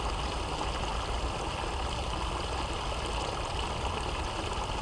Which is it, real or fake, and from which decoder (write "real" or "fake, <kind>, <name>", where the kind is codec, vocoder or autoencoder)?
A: real